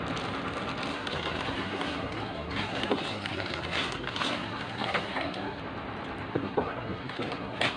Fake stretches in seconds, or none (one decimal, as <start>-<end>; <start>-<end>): 0.9-5.6; 6.3-7.8